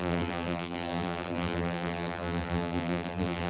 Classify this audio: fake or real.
fake